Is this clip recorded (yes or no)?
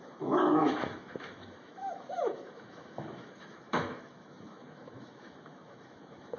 no